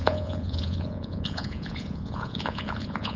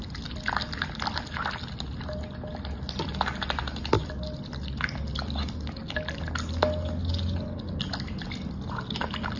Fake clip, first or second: first